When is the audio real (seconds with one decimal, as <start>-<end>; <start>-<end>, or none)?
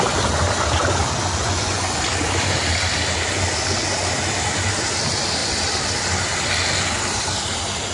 0.0-1.4; 2.0-7.9